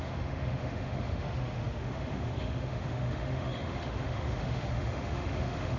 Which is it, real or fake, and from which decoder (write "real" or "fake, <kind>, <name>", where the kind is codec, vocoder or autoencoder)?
fake, autoencoder, DAC-VAE